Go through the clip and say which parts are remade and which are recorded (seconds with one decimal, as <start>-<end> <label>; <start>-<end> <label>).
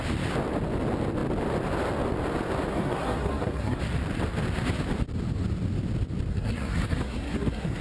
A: 0.0-2.7 recorded; 2.7-3.8 remade; 3.8-6.3 recorded; 6.3-7.8 remade